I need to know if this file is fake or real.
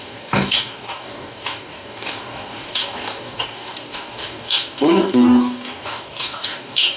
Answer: fake